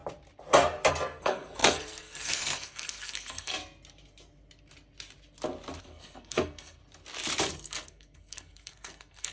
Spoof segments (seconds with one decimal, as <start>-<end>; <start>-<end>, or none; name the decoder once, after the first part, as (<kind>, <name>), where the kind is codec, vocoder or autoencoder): 0.9-3.5 (codec, SNAC); 5.8-6.8; 7.5-9.3